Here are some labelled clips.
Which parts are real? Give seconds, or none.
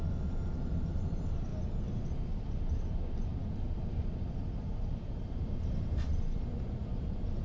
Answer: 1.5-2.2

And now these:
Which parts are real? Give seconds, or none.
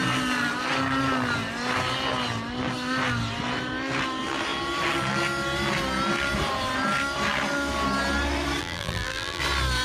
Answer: 0.0-8.6; 9.4-9.8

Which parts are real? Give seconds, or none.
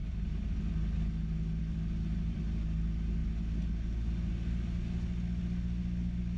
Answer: 0.6-1.6; 2.4-6.4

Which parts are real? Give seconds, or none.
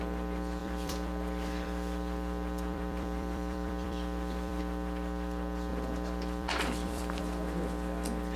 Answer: 0.0-0.6; 4.6-5.7; 7.2-8.4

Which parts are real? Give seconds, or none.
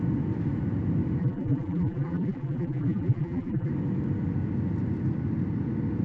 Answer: 0.0-1.2; 3.7-6.0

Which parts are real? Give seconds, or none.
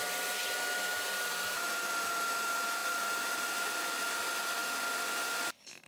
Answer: 0.0-2.8; 4.0-5.9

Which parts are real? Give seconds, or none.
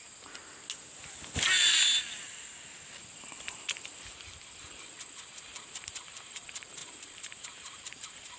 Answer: 0.4-5.4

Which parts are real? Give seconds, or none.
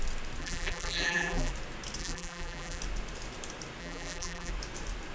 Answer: 0.0-0.4; 1.5-2.0; 2.8-3.8; 4.5-5.1